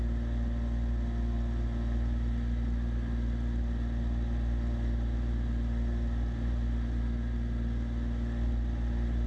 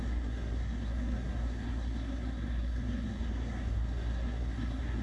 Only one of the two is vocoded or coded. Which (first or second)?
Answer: second